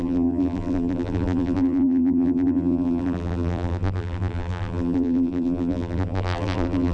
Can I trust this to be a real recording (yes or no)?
no